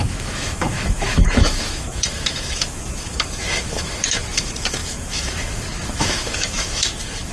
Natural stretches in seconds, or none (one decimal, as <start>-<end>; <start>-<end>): none